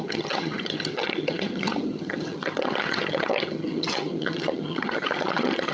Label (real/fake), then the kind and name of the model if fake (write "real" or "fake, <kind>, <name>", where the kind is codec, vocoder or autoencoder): fake, vocoder, HiFi-GAN